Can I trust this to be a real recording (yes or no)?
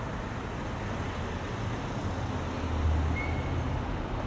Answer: yes